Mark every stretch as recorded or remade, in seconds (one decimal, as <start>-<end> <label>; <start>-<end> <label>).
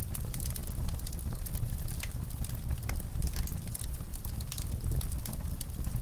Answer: 0.0-6.0 recorded